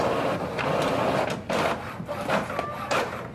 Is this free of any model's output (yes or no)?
yes